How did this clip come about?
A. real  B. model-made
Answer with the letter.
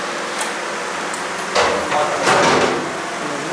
A